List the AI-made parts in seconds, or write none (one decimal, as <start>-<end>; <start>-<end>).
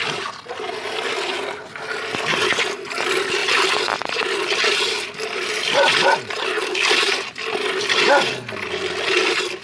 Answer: 3.4-7.8